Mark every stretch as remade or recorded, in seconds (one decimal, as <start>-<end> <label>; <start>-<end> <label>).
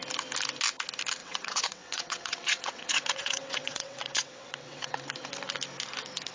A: 0.0-1.2 recorded; 1.2-5.0 remade; 5.0-6.3 recorded